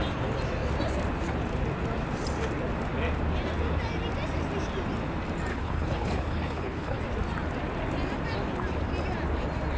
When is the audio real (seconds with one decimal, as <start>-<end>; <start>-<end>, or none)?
0.0-5.5; 7.0-9.8